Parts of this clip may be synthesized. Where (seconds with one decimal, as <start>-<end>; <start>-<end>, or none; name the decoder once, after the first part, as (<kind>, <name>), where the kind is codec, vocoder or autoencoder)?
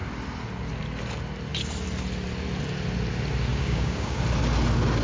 3.5-4.2 (codec, DAC)